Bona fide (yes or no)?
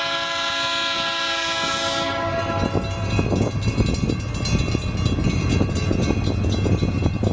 yes